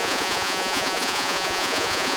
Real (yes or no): no